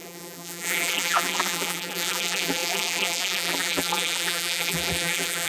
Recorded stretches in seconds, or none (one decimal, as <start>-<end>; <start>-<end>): none